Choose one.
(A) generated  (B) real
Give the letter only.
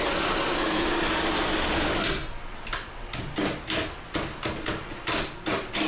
B